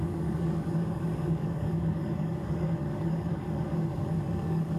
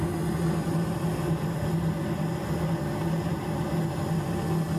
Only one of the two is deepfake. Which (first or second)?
first